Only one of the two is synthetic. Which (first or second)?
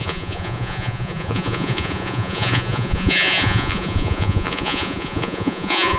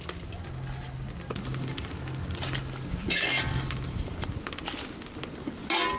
first